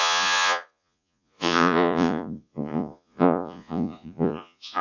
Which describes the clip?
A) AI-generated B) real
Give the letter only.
A